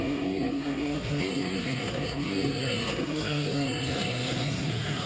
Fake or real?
fake